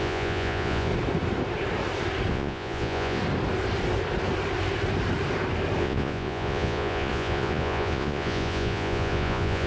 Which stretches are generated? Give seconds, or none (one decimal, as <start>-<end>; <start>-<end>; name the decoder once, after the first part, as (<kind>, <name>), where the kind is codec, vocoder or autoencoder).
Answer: 0.0-0.9 (vocoder, Vocos); 2.3-3.2; 5.8-9.7